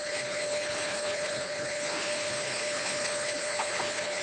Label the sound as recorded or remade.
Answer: remade